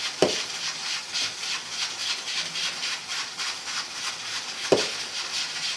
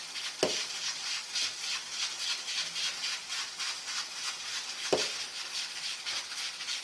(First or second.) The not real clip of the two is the first